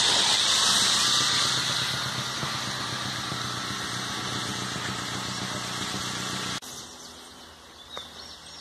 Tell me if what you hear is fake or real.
real